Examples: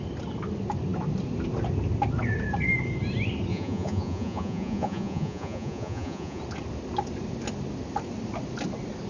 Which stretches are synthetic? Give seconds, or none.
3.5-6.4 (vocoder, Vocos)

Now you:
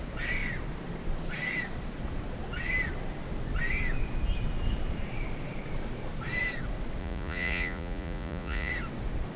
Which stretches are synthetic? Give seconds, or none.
7.0-8.7 (vocoder, Vocos)